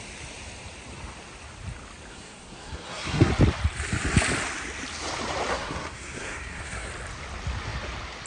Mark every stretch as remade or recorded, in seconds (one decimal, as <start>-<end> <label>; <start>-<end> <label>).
0.0-2.1 recorded; 2.1-3.3 remade; 3.3-5.5 recorded; 5.5-6.9 remade; 6.9-8.3 recorded